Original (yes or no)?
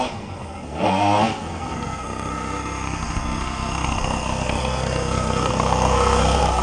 no